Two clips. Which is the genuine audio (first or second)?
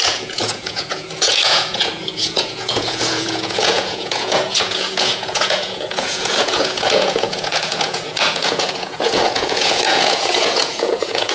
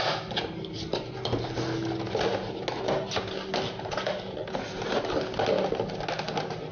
second